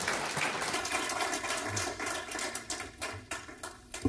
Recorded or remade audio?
recorded